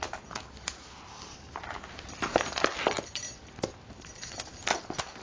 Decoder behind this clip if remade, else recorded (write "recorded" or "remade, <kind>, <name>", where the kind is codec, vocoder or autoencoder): recorded